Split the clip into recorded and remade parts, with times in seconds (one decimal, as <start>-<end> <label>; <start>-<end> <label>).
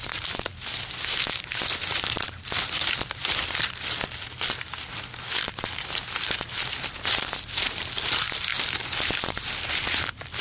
0.0-0.5 remade; 0.5-1.2 recorded; 1.2-8.5 remade; 8.5-9.3 recorded; 9.3-10.4 remade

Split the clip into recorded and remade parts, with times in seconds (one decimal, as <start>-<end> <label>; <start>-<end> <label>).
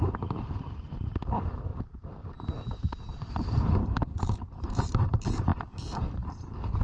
0.0-6.8 remade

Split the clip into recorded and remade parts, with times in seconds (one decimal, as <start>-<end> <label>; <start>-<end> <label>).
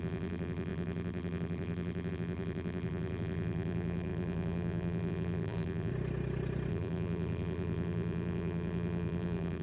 0.0-5.9 remade; 5.9-6.7 recorded; 6.7-9.6 remade